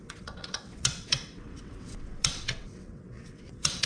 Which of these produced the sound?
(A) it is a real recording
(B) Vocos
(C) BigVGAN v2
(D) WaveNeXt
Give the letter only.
D